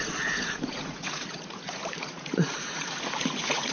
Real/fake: fake